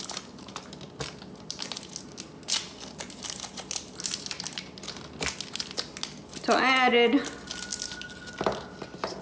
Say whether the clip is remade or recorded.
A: recorded